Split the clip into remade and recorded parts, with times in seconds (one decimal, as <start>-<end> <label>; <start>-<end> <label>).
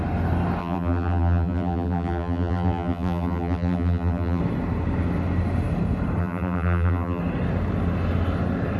0.0-0.6 recorded; 0.6-4.4 remade; 4.4-6.2 recorded; 6.2-7.2 remade; 7.2-8.8 recorded